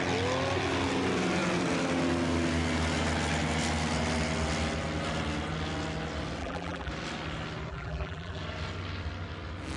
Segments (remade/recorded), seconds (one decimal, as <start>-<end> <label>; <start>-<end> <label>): 0.0-6.4 recorded; 6.4-6.9 remade; 6.9-7.7 recorded; 7.7-8.4 remade; 8.4-9.8 recorded